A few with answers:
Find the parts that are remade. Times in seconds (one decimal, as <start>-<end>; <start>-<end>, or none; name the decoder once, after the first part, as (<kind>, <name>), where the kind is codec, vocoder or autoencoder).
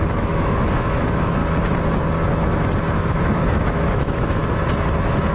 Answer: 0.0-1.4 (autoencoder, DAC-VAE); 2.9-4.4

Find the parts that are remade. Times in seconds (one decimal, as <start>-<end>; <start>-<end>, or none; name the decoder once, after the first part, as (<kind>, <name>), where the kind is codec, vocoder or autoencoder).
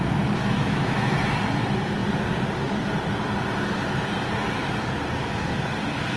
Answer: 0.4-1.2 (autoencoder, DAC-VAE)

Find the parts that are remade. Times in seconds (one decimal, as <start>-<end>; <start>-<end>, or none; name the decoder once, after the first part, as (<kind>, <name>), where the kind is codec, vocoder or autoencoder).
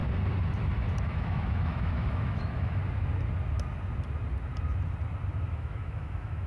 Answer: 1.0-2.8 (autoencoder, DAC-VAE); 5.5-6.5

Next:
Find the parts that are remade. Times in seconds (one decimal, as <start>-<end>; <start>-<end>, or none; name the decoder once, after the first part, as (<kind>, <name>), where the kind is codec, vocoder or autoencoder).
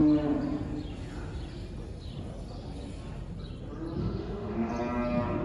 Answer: 4.0-4.7 (autoencoder, DAC-VAE)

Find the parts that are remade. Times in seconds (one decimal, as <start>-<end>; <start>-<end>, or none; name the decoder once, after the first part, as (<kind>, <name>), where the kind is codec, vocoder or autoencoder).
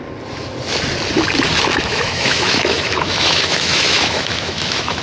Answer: 1.7-5.0 (autoencoder, DAC-VAE)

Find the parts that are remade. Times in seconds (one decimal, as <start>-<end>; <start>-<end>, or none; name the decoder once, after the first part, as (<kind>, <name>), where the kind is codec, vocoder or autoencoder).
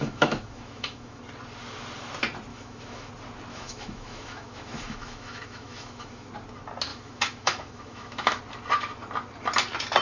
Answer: 0.0-1.2 (autoencoder, DAC-VAE); 2.5-3.1; 3.5-6.3; 6.9-8.4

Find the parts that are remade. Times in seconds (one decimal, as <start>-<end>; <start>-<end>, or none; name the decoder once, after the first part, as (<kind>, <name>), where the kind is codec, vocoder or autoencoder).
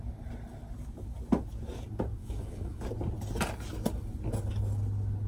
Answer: 2.2-2.8 (autoencoder, DAC-VAE)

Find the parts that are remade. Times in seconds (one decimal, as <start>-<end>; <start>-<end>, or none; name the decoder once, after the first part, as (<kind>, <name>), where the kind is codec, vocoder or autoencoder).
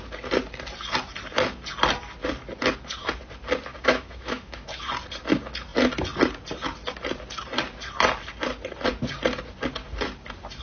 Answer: 3.7-4.8 (autoencoder, DAC-VAE)